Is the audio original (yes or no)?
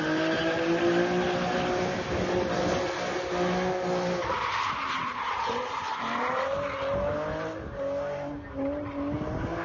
yes